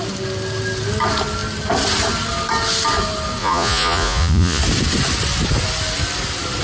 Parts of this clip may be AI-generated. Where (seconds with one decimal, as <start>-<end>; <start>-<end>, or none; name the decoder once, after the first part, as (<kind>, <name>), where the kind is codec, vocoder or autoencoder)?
3.4-4.6 (vocoder, Vocos)